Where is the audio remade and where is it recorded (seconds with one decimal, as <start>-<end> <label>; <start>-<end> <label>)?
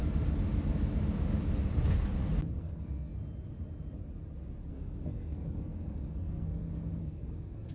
0.0-2.5 recorded; 2.5-3.1 remade; 3.1-4.7 recorded; 4.7-7.7 remade